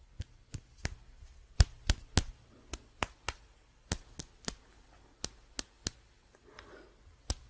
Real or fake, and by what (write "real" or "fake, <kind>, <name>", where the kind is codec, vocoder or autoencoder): real